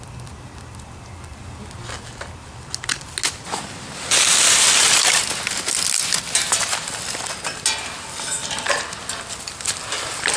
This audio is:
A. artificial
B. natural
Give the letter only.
B